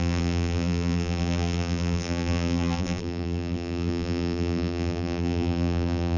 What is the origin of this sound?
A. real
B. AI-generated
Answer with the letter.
B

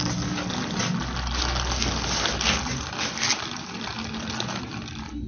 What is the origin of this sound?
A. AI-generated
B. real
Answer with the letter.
B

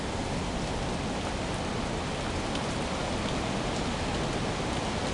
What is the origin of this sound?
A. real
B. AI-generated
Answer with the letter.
A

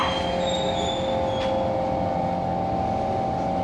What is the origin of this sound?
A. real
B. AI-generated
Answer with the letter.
A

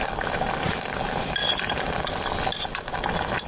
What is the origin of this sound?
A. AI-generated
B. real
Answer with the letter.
B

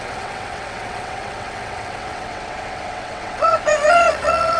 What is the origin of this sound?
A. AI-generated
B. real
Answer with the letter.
A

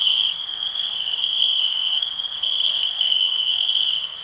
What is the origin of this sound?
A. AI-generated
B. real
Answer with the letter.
A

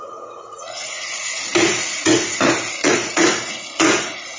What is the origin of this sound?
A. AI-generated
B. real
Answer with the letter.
A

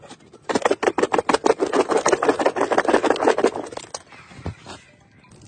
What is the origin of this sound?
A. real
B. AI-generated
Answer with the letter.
A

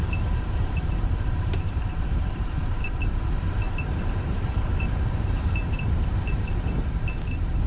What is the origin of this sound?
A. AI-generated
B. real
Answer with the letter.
A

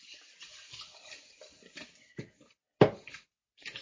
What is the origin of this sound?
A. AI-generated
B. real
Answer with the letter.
B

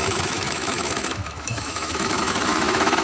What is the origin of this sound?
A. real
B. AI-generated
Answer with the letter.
B